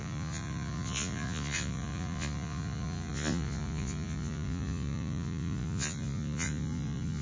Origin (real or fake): fake